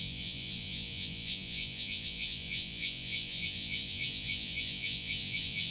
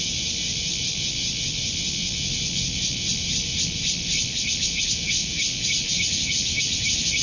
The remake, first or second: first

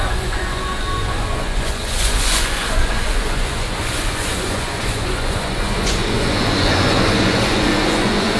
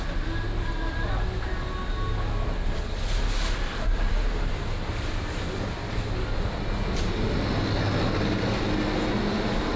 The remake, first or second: first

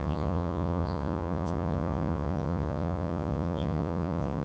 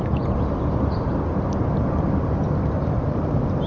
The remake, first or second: first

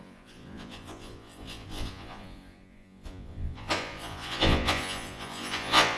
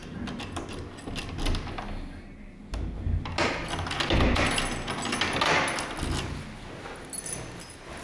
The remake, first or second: first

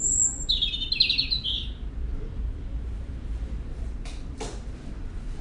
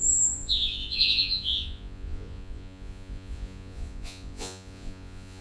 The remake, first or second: second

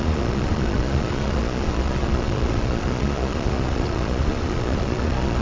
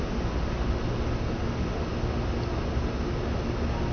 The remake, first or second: first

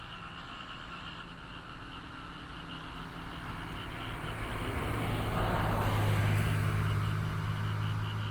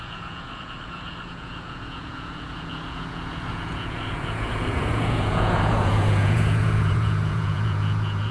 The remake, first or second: second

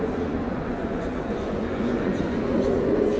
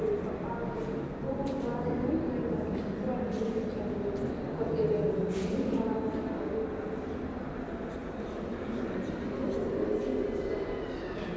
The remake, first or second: first